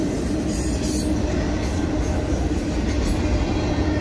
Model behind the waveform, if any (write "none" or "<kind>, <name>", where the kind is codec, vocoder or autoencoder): none